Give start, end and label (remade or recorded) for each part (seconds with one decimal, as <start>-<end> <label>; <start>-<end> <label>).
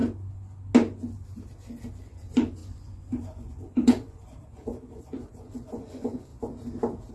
0.0-1.9 recorded; 1.9-6.3 remade; 6.3-7.1 recorded